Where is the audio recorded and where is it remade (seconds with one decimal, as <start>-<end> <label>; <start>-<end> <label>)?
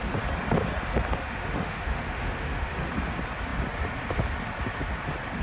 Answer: 0.0-1.4 recorded; 1.4-2.9 remade; 2.9-5.4 recorded